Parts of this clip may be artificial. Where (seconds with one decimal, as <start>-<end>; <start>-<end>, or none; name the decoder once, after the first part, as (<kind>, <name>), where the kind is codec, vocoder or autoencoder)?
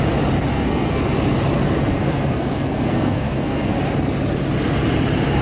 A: 0.5-1.0 (codec, SNAC); 1.9-3.8